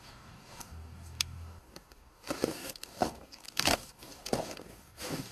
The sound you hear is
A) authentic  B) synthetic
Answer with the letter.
B